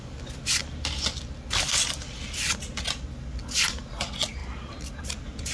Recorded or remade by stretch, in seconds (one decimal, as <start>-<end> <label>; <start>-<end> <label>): 0.0-5.5 recorded